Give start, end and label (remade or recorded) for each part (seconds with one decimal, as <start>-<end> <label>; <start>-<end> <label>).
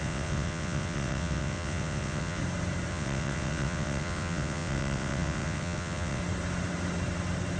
0.0-2.4 remade; 2.4-2.9 recorded; 2.9-6.2 remade; 6.2-7.6 recorded